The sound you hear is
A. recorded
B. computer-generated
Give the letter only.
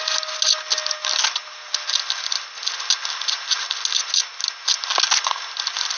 A